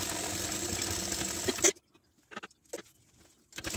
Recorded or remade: recorded